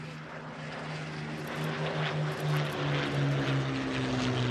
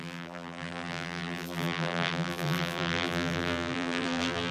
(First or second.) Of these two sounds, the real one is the first